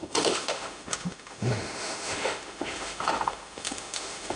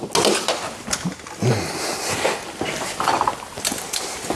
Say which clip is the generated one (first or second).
first